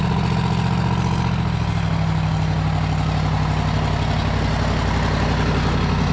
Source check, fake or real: real